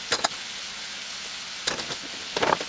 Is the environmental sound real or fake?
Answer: real